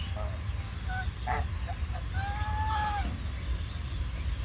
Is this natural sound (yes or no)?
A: yes